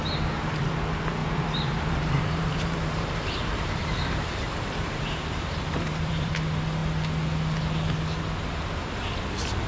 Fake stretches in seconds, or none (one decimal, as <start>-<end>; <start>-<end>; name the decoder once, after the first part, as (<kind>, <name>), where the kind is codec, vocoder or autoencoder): 1.2-6.3 (vocoder, BigVGAN v2)